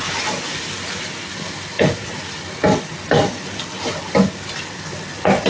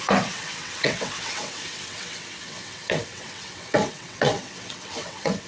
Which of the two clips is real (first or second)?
first